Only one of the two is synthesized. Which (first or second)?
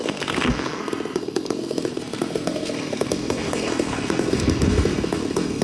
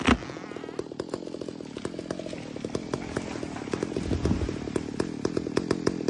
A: first